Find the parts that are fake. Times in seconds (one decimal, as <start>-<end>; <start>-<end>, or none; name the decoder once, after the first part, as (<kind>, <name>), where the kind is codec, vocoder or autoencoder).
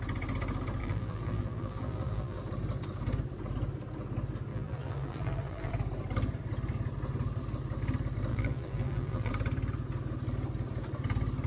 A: 0.8-2.4 (vocoder, BigVGAN v2); 4.5-5.7; 8.3-9.3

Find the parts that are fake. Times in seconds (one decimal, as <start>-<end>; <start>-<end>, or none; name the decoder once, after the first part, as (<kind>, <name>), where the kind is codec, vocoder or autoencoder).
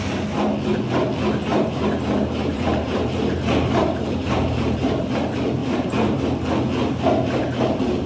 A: 1.5-5.1 (vocoder, BigVGAN v2); 5.6-6.2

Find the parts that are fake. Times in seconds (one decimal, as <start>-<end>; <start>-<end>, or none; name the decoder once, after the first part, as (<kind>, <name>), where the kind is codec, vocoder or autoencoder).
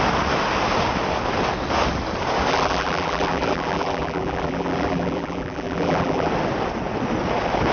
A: 2.5-6.3 (vocoder, BigVGAN v2)